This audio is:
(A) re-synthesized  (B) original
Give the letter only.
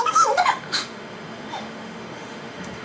A